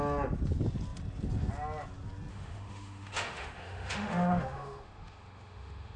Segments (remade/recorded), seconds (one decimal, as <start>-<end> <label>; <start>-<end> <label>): 0.0-2.3 recorded; 2.3-6.0 remade